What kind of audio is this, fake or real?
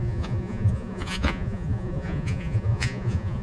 fake